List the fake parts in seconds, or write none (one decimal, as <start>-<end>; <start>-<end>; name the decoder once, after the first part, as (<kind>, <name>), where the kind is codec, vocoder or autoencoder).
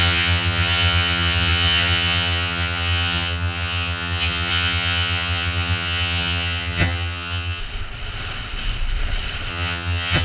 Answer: 0.0-7.6 (vocoder, HiFi-GAN); 9.5-10.2